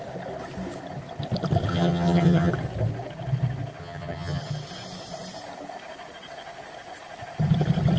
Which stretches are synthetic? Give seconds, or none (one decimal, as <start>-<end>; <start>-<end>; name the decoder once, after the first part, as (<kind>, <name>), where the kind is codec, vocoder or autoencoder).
1.7-2.5 (vocoder, HiFi-GAN); 3.8-4.4